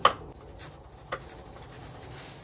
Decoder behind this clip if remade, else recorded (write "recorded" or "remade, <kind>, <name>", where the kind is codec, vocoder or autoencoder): recorded